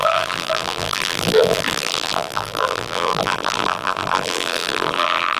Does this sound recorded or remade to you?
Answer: remade